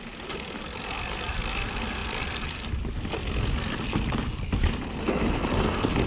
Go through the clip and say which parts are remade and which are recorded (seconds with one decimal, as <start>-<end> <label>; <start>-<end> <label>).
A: 0.0-6.1 recorded